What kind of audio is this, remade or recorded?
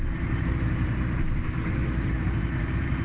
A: remade